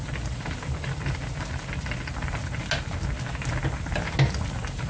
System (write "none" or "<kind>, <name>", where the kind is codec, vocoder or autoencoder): none